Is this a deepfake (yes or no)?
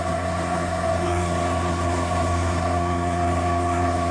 yes